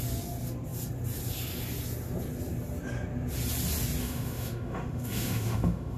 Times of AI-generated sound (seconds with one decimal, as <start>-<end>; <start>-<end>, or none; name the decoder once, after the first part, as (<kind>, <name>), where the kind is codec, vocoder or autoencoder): 4.0-6.0 (autoencoder, DAC-VAE)